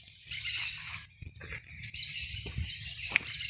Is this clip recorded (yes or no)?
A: yes